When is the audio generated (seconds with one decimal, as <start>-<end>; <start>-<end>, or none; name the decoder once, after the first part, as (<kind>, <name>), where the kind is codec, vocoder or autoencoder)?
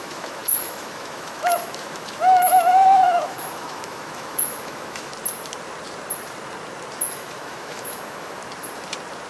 0.0-5.1 (autoencoder, DAC-VAE); 7.1-8.4